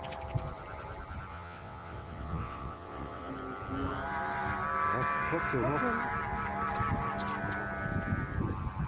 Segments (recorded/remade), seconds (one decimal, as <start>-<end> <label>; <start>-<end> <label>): 0.0-1.3 recorded; 1.3-3.3 remade; 3.3-8.9 recorded